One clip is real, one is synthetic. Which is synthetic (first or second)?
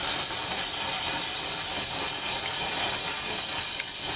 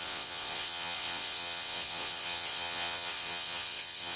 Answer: second